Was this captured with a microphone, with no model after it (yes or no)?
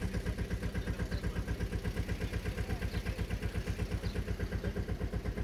yes